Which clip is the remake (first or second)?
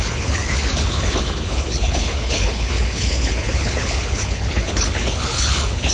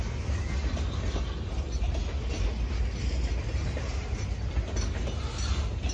first